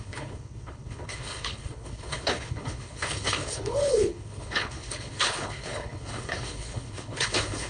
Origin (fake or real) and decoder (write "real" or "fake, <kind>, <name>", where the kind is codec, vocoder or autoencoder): fake, codec, HILCodec